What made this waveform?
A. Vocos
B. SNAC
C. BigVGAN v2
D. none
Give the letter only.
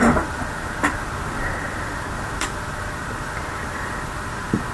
C